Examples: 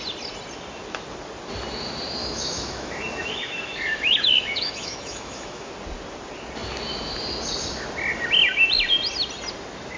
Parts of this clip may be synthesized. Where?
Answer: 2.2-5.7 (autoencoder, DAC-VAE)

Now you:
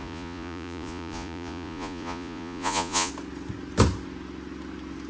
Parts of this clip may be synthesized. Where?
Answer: 0.0-3.1 (vocoder, Vocos)

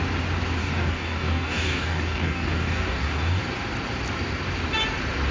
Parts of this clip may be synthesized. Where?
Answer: 0.6-3.4 (codec, DAC)

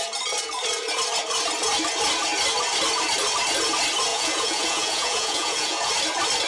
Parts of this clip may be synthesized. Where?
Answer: 4.1-5.9 (vocoder, Vocos)

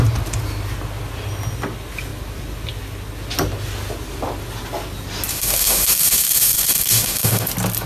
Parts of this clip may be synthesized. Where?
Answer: 5.3-7.5 (autoencoder, DAC-VAE)